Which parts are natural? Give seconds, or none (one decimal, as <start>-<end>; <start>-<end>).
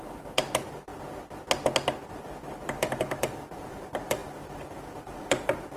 0.9-2.5